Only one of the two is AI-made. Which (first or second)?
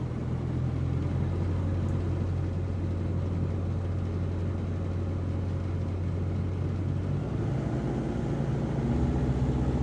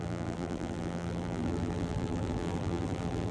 second